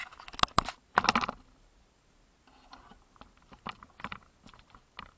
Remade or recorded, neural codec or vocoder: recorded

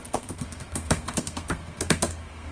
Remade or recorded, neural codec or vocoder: remade, codec, SNAC